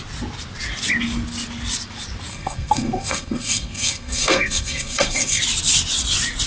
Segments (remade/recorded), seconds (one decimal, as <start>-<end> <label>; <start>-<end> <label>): 0.0-2.3 recorded; 2.3-5.4 remade; 5.4-6.5 recorded